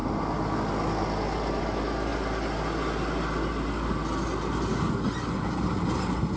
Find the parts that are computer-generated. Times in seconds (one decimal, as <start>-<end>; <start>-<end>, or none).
none